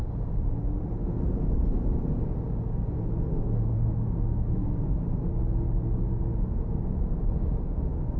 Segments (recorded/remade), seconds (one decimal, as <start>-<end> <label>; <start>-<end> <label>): 0.0-3.3 recorded; 3.3-4.7 remade; 4.7-8.2 recorded